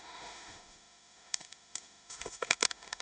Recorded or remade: remade